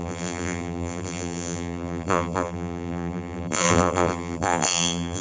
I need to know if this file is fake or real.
fake